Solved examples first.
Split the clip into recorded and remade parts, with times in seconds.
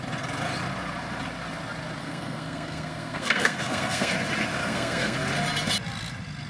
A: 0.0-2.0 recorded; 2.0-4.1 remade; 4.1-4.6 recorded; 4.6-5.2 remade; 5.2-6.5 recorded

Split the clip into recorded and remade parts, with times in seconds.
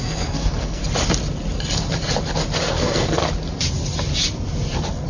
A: 0.0-0.8 remade; 0.8-2.7 recorded; 2.7-3.2 remade; 3.2-5.1 recorded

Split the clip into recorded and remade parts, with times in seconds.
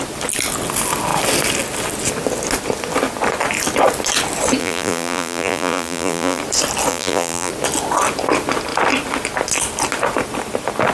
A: 0.0-4.6 recorded; 4.6-6.4 remade; 6.4-6.9 recorded; 6.9-7.5 remade; 7.5-10.9 recorded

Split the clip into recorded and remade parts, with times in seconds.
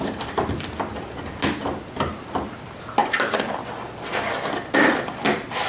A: 0.0-3.0 recorded; 3.0-3.5 remade; 3.5-5.7 recorded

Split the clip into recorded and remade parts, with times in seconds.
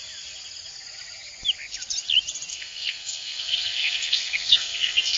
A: 0.0-2.5 recorded; 2.5-5.2 remade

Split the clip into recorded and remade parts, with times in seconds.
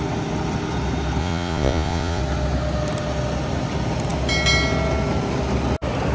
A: 0.0-1.2 recorded; 1.2-2.2 remade; 2.2-6.1 recorded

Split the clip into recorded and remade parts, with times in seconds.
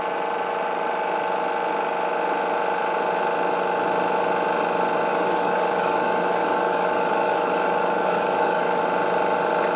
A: 0.0-5.1 recorded; 5.1-8.8 remade; 8.8-9.8 recorded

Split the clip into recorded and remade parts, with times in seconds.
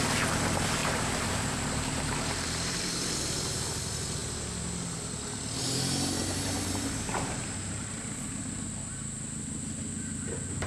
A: 0.0-0.8 recorded; 0.8-3.6 remade; 3.6-6.2 recorded; 6.2-8.5 remade; 8.5-10.7 recorded